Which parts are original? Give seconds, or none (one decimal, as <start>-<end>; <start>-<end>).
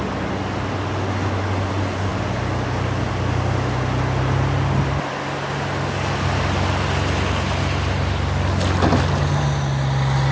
0.0-10.3